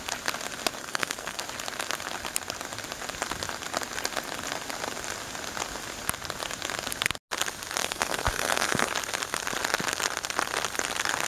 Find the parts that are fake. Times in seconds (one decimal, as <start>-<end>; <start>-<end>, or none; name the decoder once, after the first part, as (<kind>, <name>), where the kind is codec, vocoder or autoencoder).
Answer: 0.8-1.4 (codec, SNAC); 7.8-8.9